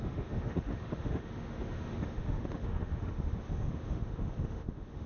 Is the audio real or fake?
fake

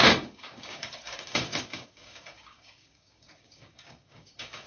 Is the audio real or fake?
fake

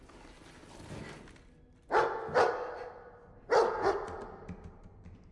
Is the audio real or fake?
real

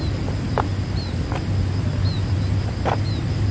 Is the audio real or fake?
real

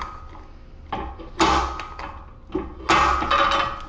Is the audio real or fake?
real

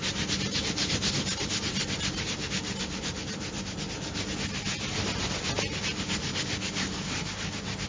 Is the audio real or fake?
real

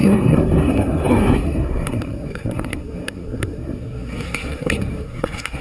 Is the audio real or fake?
fake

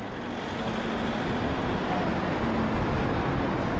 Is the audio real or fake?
real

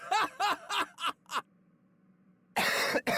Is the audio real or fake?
real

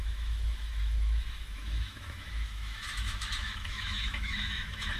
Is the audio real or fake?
fake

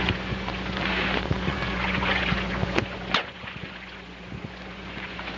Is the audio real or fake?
fake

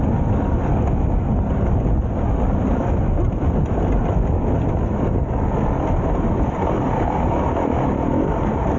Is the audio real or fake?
real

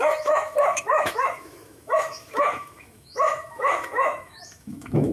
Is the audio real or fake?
fake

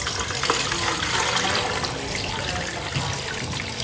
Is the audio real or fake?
real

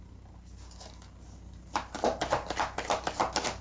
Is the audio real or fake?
real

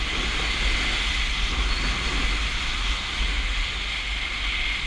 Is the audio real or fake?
real